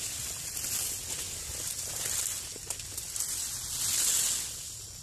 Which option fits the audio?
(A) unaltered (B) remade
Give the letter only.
A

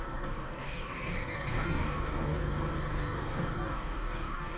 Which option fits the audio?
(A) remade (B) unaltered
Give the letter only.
A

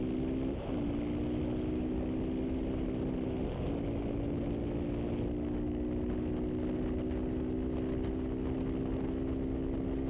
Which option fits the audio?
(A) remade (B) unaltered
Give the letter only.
B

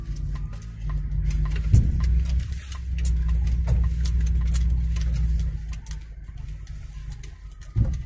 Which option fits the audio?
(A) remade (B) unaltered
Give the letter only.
B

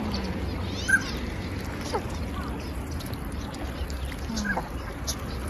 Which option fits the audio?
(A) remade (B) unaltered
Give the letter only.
B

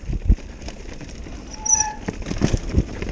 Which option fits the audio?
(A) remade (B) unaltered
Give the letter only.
B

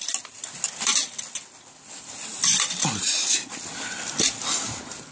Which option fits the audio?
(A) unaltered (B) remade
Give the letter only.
A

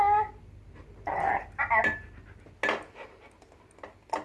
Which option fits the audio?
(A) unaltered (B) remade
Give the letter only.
A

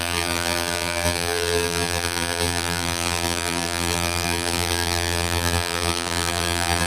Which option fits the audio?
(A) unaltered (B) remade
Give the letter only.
B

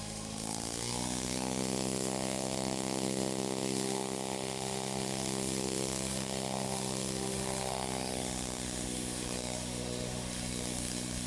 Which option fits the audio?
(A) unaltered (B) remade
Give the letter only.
B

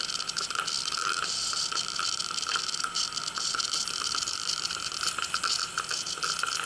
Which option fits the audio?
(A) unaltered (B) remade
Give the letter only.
A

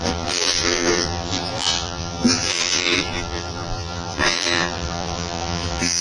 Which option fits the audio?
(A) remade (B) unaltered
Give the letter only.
A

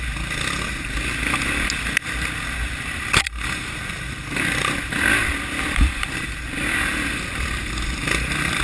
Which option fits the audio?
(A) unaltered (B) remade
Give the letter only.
A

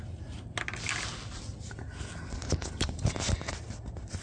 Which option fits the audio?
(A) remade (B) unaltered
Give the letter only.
B